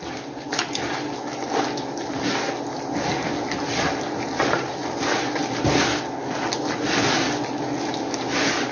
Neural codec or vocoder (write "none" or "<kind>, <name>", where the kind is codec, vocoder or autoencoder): none